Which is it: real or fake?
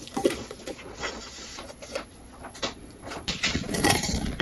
fake